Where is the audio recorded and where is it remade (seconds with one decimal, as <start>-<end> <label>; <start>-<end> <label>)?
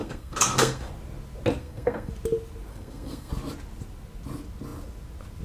0.0-0.9 remade; 0.9-1.6 recorded; 1.6-2.1 remade; 2.1-2.7 recorded; 2.7-3.3 remade; 3.3-5.4 recorded